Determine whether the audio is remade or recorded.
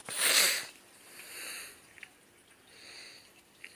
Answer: recorded